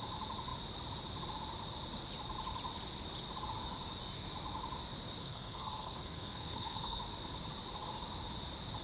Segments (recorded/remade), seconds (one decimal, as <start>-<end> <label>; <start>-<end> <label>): 0.0-5.2 recorded; 5.2-7.0 remade; 7.0-8.8 recorded